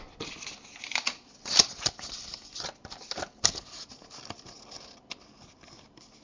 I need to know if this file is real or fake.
real